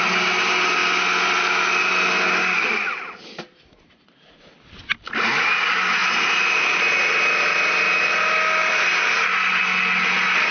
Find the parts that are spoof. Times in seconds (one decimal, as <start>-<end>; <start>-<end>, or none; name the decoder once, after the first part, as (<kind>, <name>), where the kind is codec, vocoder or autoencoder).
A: none